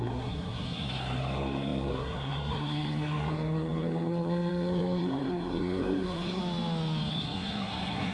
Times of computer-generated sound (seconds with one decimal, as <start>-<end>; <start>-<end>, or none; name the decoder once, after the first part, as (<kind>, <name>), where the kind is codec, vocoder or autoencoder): 0.0-6.4 (codec, SNAC); 7.1-8.1